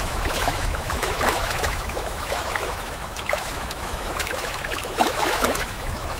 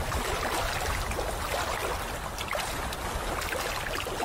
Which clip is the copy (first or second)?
first